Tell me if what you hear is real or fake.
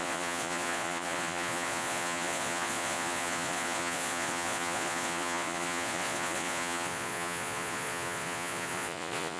fake